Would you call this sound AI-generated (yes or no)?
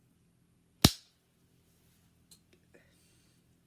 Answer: no